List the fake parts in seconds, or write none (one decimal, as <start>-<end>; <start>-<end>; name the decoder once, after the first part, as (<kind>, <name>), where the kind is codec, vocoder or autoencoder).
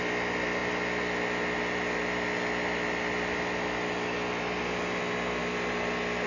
none